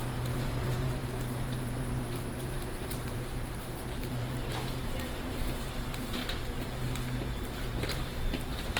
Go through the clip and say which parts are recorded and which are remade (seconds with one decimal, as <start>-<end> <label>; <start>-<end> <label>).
0.0-6.2 remade; 6.2-7.6 recorded; 7.6-8.8 remade

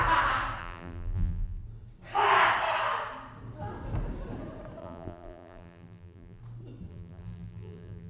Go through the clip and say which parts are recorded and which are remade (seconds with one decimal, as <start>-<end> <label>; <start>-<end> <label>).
0.0-0.6 recorded; 0.6-1.6 remade; 1.6-4.8 recorded; 4.8-6.4 remade; 6.4-6.9 recorded; 6.9-8.1 remade

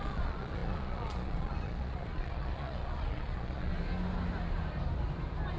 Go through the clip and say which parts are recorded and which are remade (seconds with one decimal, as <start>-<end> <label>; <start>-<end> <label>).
0.0-3.7 remade; 3.7-5.6 recorded

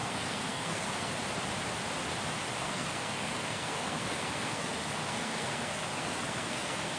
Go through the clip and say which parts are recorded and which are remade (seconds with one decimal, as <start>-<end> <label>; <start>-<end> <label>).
0.0-1.1 remade; 1.1-2.6 recorded; 2.6-7.0 remade

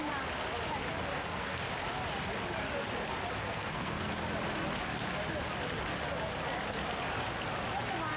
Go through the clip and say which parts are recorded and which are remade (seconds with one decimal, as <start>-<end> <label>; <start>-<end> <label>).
0.0-1.1 recorded; 1.1-1.7 remade; 1.7-3.4 recorded; 3.4-4.1 remade; 4.1-8.2 recorded

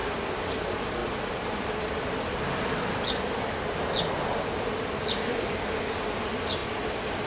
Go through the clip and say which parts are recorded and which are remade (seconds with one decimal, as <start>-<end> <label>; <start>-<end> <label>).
0.0-7.3 recorded

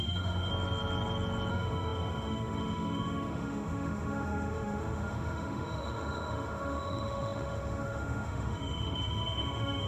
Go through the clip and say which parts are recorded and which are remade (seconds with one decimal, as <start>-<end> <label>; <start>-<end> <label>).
0.0-0.5 remade; 0.5-1.5 recorded; 1.5-9.9 remade

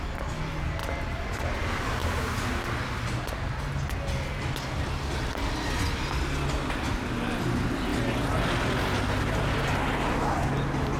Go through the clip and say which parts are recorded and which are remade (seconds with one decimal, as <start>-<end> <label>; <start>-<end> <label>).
0.0-11.0 recorded